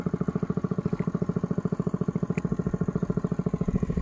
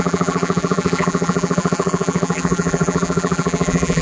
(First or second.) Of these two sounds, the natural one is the first